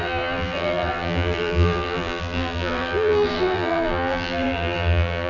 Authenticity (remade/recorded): remade